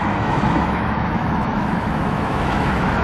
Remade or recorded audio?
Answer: remade